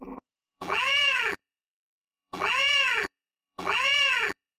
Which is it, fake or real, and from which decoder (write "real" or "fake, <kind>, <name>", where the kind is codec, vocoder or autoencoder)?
fake, vocoder, BigVGAN v2